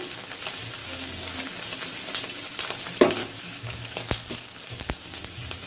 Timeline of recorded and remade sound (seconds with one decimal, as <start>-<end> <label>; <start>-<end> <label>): 0.0-0.8 recorded; 0.8-1.5 remade; 1.5-3.2 recorded; 3.2-5.2 remade; 5.2-5.7 recorded